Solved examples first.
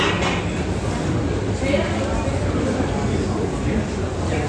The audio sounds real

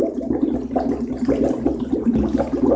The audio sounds real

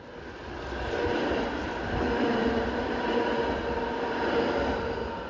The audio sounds real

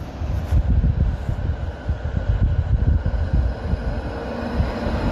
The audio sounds real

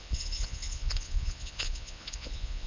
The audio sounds fake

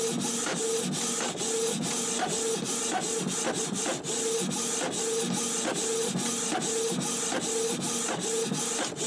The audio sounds real